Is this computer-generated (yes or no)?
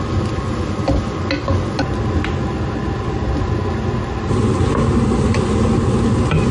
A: no